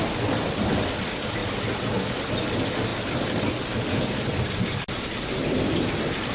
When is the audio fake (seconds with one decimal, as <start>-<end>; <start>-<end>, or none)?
none